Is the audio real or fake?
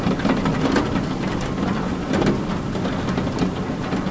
real